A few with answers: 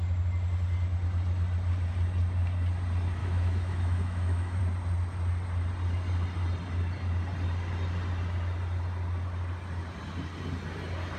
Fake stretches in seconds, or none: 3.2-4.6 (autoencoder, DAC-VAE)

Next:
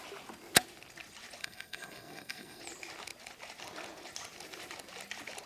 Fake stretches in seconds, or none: 1.4-2.6 (codec, SNAC)

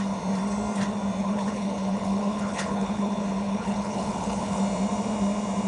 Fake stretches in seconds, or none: 1.2-4.6 (codec, HILCodec)